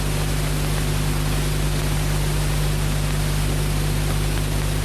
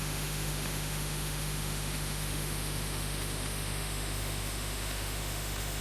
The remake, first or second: second